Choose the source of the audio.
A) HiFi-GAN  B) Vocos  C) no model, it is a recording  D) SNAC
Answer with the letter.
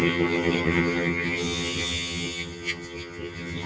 A